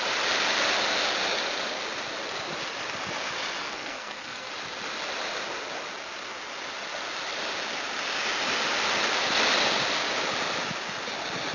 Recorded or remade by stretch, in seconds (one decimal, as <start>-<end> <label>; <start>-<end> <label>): 0.0-3.6 recorded; 3.6-4.5 remade; 4.5-11.5 recorded